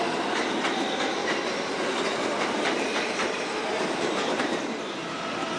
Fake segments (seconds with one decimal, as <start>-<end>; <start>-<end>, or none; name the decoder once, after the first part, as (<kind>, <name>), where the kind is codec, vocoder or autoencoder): 1.2-4.6 (vocoder, BigVGAN v2)